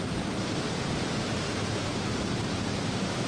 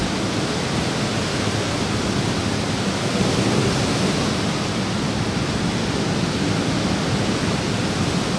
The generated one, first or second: first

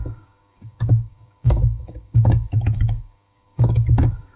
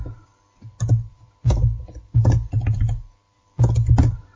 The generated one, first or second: first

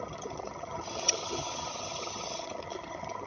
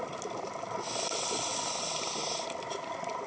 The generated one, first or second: first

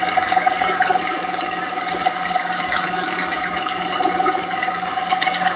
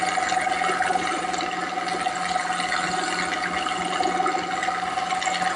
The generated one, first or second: first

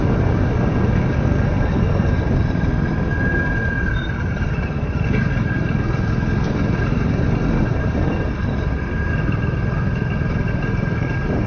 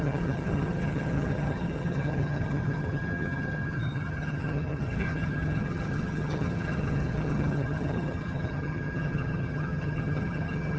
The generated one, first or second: second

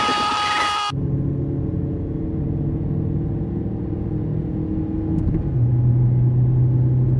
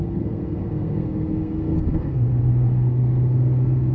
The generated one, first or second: second